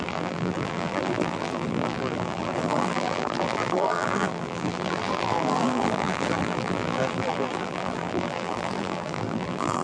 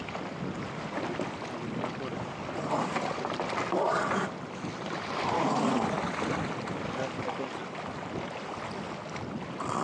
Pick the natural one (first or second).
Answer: second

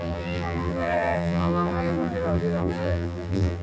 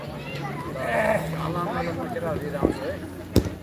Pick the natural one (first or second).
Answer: second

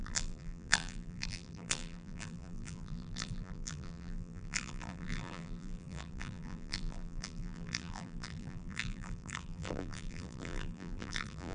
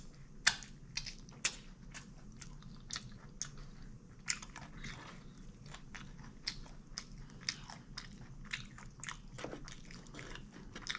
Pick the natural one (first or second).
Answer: second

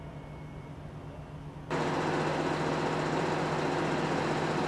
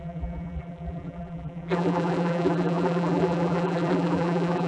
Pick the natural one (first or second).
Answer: first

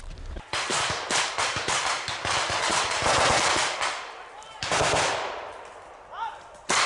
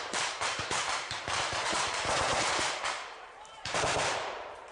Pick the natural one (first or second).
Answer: first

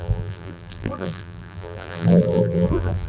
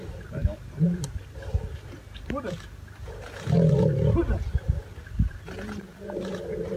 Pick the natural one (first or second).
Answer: second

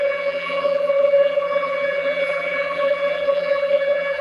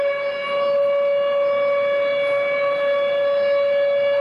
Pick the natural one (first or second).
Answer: second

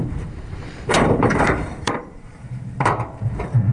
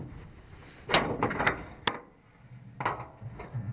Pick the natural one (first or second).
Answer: second